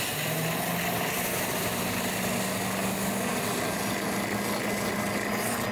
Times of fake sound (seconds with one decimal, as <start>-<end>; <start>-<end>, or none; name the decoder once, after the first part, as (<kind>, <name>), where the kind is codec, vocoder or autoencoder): none